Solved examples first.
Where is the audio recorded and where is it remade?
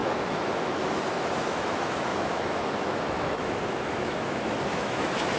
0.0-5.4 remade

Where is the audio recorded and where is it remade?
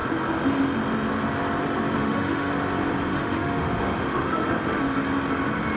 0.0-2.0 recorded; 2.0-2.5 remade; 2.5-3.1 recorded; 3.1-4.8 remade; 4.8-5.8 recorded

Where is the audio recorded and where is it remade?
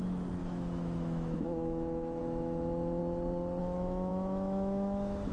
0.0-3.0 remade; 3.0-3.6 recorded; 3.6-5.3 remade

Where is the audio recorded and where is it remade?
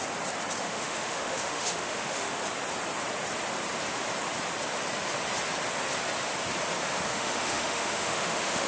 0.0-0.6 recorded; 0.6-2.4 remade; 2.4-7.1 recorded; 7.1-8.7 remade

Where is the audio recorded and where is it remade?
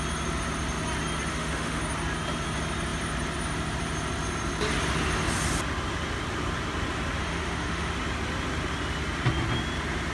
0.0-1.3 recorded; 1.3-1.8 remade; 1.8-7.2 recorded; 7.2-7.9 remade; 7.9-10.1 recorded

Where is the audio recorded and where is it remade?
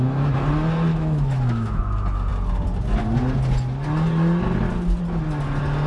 0.0-0.9 recorded; 0.9-1.8 remade; 1.8-5.9 recorded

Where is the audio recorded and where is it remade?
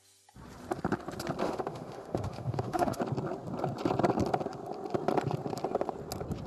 0.0-1.4 recorded; 1.4-3.0 remade; 3.0-6.5 recorded